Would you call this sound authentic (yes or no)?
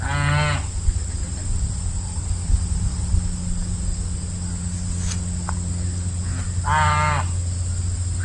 yes